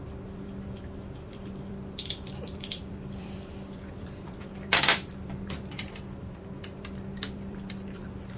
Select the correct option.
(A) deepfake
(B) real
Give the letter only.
A